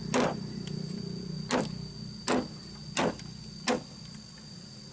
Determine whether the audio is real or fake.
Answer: real